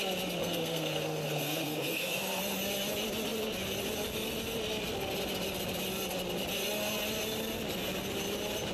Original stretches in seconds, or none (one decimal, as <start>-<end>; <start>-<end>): 0.0-0.4; 2.4-8.7